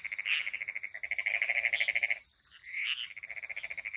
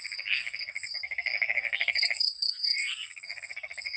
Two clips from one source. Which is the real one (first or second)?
first